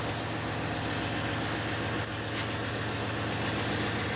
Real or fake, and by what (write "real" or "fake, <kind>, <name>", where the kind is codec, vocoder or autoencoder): real